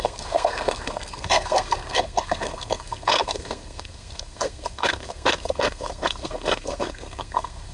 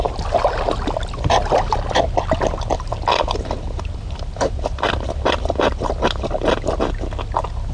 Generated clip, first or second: first